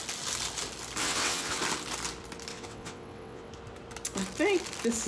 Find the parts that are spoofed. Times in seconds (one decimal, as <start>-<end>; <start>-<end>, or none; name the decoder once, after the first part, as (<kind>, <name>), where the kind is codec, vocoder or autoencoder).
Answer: 1.0-1.6 (vocoder, WaveNeXt); 2.5-3.5